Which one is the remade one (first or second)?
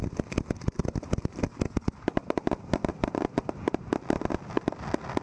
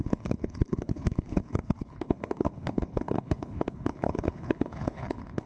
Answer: second